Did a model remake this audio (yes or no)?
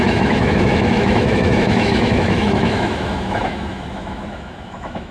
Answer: yes